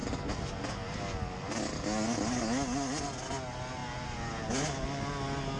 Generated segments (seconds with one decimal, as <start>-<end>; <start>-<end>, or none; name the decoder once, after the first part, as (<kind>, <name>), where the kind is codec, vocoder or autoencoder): none